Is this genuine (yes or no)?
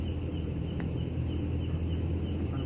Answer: yes